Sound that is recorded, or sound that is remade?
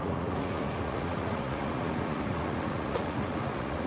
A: remade